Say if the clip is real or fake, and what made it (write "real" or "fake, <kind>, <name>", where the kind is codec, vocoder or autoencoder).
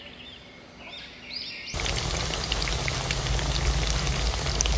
real